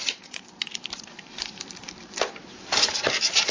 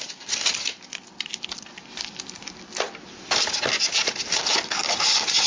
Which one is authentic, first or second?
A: second